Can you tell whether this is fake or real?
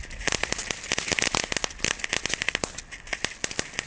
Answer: real